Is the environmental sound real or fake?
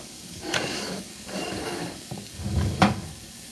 fake